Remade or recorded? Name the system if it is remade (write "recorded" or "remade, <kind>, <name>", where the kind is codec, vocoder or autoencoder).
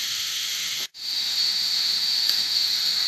remade, autoencoder, DAC-VAE